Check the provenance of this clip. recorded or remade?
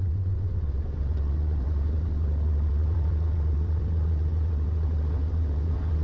remade